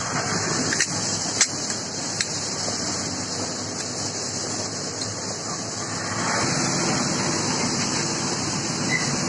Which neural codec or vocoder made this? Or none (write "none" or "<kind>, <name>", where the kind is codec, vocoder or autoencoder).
none